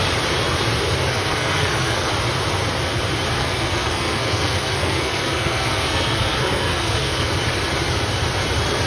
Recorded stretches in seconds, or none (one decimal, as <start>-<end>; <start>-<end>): 0.0-1.1; 2.1-3.4; 7.3-8.9